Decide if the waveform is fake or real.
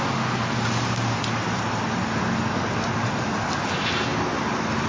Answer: real